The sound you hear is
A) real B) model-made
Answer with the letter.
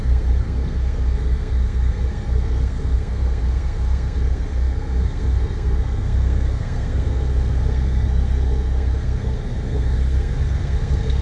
B